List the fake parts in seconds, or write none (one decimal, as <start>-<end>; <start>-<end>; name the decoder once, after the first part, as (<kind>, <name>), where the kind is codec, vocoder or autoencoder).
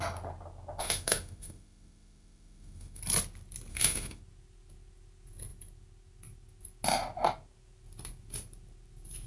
0.8-3.0 (autoencoder, DAC-VAE); 3.7-4.2